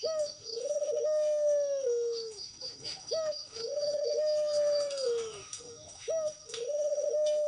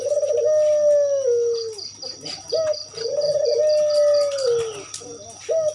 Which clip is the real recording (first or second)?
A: second